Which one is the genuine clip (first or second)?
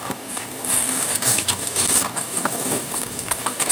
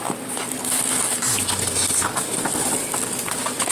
second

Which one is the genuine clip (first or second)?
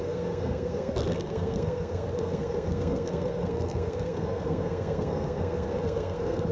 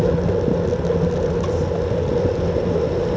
second